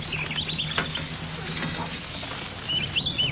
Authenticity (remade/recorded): recorded